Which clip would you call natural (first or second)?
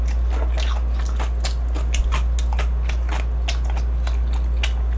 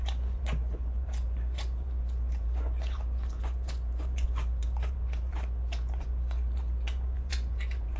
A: first